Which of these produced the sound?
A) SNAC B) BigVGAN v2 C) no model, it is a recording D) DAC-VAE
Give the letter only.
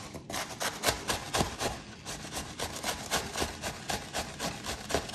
C